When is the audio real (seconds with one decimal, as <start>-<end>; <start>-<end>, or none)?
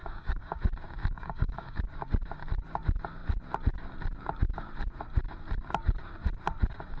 0.6-1.0; 1.8-7.0